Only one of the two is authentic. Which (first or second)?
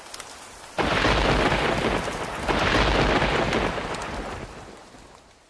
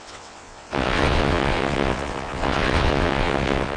first